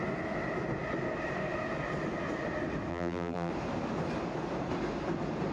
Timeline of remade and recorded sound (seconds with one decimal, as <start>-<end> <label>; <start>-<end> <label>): 0.0-2.9 recorded; 2.9-3.5 remade; 3.5-5.5 recorded